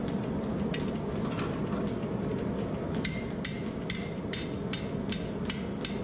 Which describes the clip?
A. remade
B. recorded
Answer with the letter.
B